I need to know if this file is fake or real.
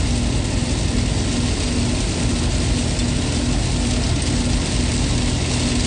real